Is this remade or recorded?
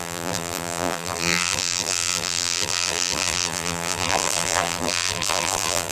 remade